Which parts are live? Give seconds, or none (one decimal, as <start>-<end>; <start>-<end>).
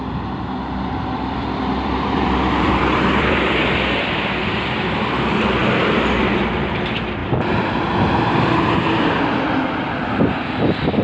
5.6-6.2